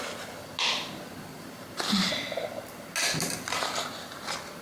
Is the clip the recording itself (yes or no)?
yes